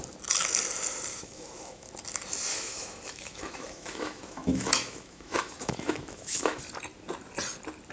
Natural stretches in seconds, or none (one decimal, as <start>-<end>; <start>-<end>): 0.0-1.1; 1.9-2.5; 6.6-7.9